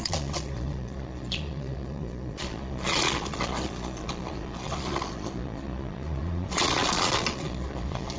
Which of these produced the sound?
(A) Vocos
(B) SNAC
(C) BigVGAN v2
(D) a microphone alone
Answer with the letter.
A